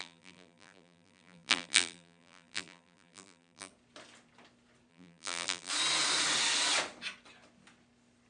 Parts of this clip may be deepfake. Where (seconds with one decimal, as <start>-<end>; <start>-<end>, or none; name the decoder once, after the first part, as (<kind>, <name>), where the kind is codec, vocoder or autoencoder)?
0.0-3.7 (vocoder, BigVGAN v2); 4.9-5.7